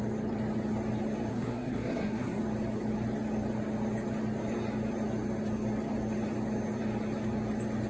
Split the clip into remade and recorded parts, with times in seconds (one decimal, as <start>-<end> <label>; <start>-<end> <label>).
0.0-1.3 recorded; 1.3-2.4 remade; 2.4-7.9 recorded